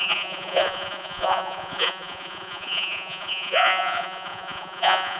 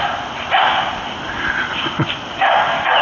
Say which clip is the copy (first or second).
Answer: first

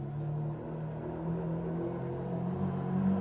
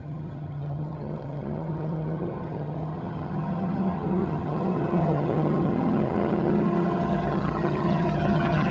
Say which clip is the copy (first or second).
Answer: second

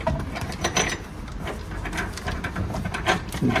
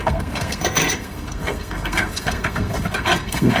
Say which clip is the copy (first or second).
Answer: second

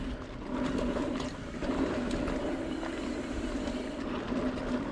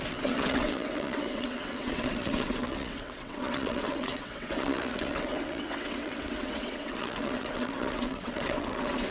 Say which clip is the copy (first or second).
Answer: second